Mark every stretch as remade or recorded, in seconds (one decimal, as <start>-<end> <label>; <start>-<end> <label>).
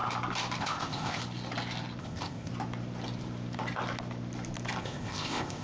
0.0-0.6 recorded; 0.6-1.2 remade; 1.2-2.0 recorded; 2.0-2.5 remade; 2.5-4.8 recorded; 4.8-5.6 remade